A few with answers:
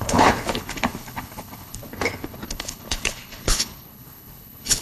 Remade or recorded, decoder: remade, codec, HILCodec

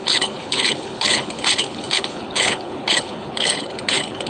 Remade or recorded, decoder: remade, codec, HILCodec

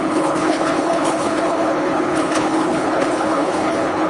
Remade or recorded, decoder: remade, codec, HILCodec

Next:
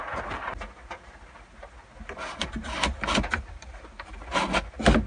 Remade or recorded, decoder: recorded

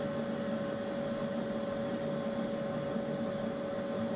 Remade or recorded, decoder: recorded